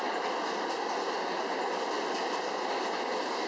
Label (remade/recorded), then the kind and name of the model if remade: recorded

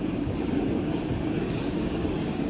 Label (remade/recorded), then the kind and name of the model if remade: remade, codec, DAC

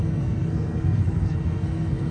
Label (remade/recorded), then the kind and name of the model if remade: remade, codec, SNAC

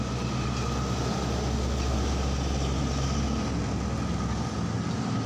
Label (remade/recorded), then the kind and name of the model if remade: recorded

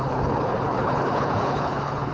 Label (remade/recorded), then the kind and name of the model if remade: remade, codec, HILCodec